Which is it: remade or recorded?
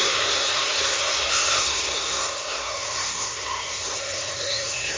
remade